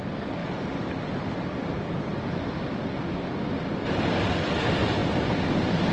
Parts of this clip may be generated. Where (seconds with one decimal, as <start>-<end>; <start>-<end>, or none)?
none